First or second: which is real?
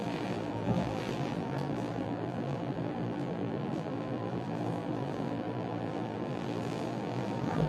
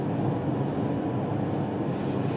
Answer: second